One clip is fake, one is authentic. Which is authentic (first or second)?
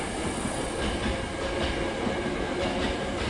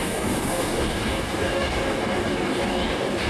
first